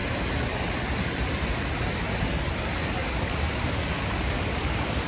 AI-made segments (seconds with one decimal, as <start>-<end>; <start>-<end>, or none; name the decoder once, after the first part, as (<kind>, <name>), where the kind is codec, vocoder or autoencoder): 3.0-5.1 (codec, DAC)

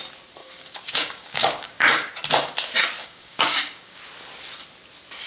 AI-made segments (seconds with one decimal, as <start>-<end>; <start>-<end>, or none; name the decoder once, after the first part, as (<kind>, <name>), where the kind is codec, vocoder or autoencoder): 0.4-2.1 (codec, DAC); 3.0-4.0